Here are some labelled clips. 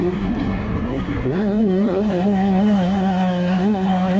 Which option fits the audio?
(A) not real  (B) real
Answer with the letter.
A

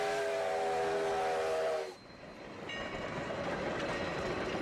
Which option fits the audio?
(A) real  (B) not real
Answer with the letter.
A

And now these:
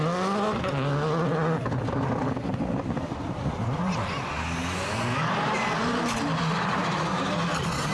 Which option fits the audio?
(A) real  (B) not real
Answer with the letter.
A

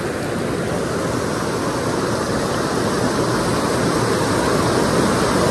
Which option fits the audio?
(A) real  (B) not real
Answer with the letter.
A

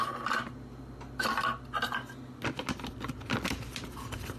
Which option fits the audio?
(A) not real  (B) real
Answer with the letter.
B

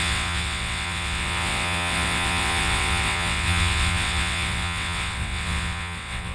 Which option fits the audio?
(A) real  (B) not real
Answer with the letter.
B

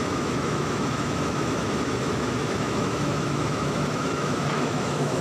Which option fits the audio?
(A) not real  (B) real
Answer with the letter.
A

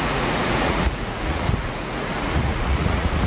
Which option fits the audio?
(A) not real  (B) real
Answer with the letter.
A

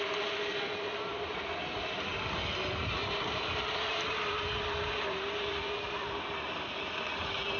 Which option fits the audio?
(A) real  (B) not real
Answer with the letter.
A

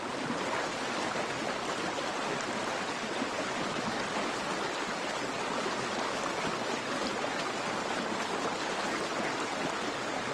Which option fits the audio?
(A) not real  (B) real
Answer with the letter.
B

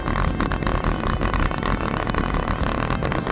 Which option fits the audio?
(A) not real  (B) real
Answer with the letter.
B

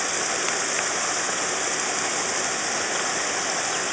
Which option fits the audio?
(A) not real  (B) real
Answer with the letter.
B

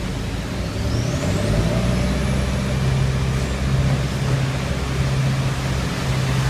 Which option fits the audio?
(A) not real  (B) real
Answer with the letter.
B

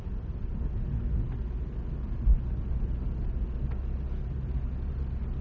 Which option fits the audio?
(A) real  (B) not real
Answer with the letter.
A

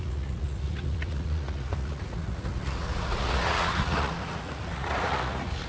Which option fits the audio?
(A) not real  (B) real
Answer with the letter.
A